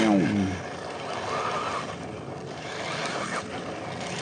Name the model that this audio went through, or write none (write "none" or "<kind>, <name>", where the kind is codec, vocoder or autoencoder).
none